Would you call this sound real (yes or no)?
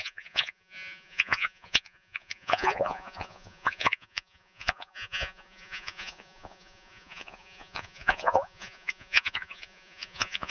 no